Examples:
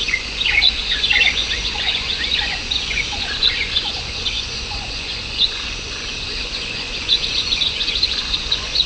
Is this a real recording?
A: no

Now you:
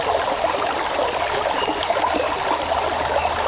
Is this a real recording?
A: yes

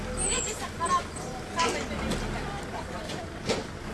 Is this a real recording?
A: yes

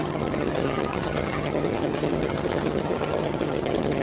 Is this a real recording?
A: no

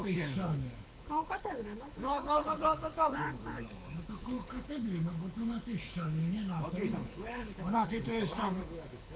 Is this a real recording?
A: no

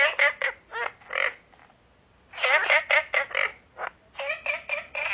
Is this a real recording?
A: yes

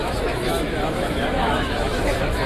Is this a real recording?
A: no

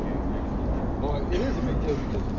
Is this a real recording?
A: yes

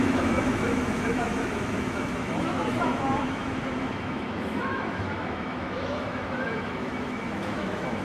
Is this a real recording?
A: no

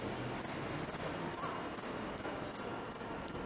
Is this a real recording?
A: yes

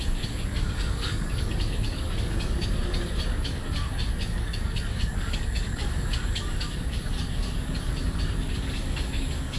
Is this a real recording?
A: no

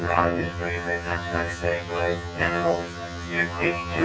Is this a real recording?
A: no